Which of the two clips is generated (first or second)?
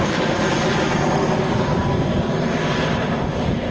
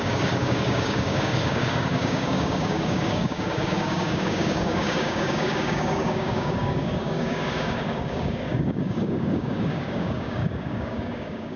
second